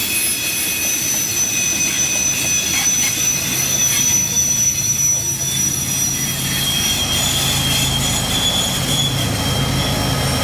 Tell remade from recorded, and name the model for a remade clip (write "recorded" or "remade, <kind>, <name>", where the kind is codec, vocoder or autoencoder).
recorded